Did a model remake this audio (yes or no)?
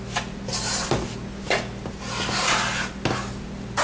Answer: no